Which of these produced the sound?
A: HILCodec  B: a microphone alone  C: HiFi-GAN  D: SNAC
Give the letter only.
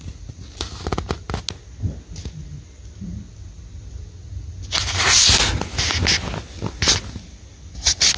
B